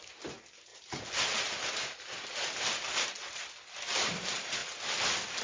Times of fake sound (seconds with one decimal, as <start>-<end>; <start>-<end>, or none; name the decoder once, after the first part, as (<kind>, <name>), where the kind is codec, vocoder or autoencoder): 0.0-3.4 (vocoder, BigVGAN v2); 4.1-4.6

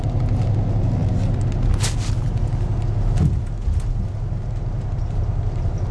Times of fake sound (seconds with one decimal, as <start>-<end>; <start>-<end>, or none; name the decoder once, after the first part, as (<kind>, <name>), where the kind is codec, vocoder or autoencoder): none

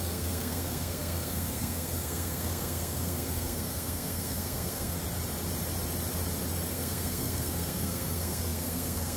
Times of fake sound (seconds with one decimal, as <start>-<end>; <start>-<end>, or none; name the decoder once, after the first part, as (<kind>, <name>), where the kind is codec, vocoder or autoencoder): 0.0-5.0 (codec, SNAC); 6.7-9.2

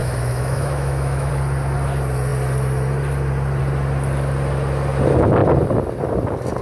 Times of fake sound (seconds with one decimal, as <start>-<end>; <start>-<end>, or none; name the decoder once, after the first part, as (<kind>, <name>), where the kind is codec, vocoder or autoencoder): 0.0-1.3 (autoencoder, DAC-VAE)

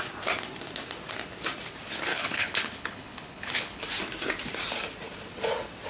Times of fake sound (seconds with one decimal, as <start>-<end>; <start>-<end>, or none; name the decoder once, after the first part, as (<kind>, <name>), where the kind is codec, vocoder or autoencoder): 2.1-3.8 (codec, HILCodec)

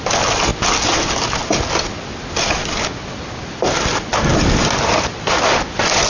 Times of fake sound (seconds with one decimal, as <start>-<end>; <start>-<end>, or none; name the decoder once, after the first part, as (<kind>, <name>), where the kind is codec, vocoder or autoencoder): none

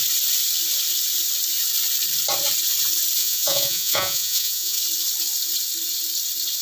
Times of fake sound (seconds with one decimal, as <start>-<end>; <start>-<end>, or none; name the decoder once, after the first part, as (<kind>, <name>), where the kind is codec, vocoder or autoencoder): 3.2-4.8 (vocoder, Vocos)

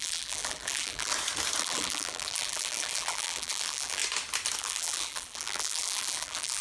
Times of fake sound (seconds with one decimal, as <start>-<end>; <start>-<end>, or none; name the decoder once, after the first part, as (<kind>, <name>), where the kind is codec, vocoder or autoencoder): 0.0-1.1 (vocoder, BigVGAN v2); 1.6-4.0; 4.6-6.6